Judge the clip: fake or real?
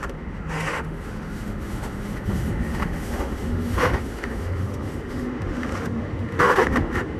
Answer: fake